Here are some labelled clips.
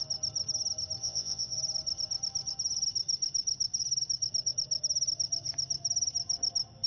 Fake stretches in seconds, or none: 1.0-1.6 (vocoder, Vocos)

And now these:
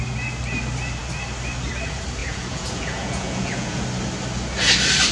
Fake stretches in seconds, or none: 2.2-3.8 (vocoder, Vocos)

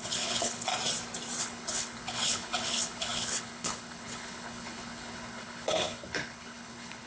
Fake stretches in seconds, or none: 0.0-0.7 (codec, HILCodec); 1.4-7.1

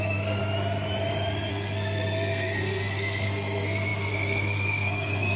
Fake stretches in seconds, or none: 0.0-0.4 (codec, SNAC); 1.5-5.4

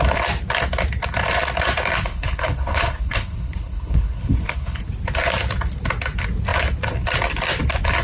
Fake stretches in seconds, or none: 2.1-4.8 (codec, HILCodec)

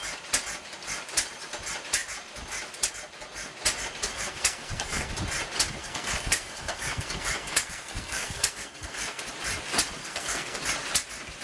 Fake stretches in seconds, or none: 4.1-5.1 (codec, SNAC); 5.8-9.2; 10.0-10.6